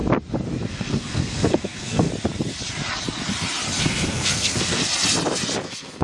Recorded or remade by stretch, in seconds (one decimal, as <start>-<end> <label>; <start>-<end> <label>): 0.0-0.7 recorded; 0.7-2.1 remade; 2.1-3.8 recorded; 3.8-4.8 remade; 4.8-5.6 recorded; 5.6-6.0 remade